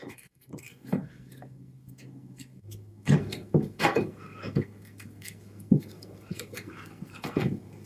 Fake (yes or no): yes